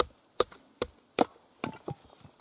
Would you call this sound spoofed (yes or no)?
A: no